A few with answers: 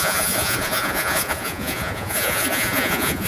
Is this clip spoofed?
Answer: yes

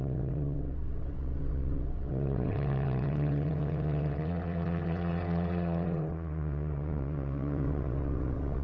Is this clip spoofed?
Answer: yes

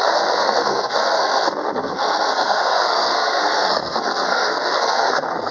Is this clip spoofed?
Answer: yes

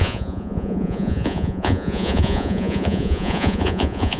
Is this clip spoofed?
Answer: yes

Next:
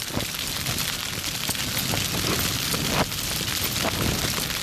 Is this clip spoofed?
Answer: no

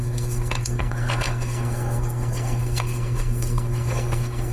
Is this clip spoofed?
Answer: yes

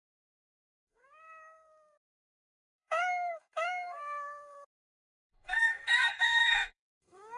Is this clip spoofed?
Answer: yes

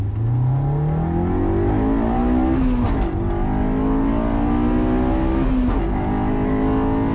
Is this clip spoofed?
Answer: no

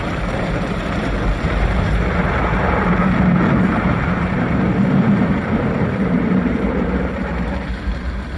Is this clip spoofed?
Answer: yes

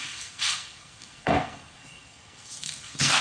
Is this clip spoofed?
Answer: yes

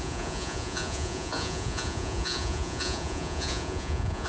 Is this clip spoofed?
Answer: yes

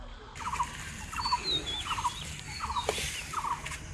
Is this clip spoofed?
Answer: no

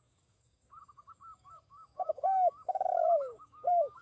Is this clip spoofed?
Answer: yes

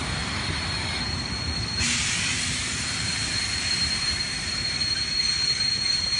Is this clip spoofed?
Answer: yes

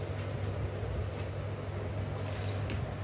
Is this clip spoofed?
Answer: no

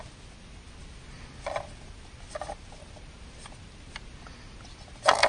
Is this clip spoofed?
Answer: no